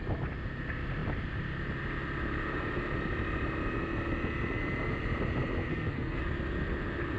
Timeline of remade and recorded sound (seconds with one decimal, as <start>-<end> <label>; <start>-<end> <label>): 0.0-5.7 recorded; 5.7-6.2 remade; 6.2-7.2 recorded